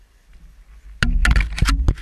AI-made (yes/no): no